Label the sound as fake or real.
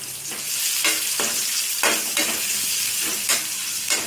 real